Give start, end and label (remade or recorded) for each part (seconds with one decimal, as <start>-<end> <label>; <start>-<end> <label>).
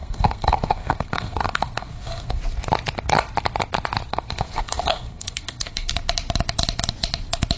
0.0-2.4 remade; 2.4-4.1 recorded; 4.1-5.9 remade; 5.9-7.6 recorded